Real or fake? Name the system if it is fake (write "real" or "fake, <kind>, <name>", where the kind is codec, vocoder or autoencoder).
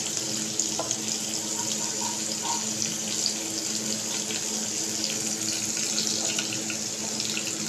real